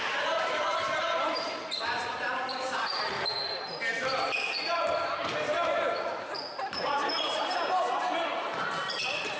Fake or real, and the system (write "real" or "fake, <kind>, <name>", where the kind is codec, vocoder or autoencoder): fake, vocoder, BigVGAN v2